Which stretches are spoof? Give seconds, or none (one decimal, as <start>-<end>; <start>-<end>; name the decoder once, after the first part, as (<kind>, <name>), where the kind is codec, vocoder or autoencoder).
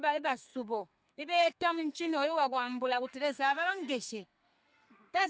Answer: 0.0-5.3 (codec, SNAC)